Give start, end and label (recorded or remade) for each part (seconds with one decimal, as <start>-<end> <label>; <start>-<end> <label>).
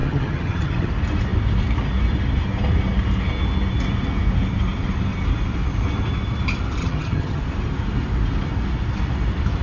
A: 0.0-0.9 remade; 0.9-6.8 recorded; 6.8-7.4 remade; 7.4-9.6 recorded